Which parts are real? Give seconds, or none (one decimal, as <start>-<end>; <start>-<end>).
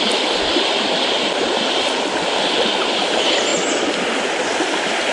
0.0-5.1